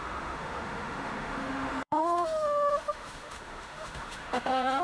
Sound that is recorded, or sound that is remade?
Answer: remade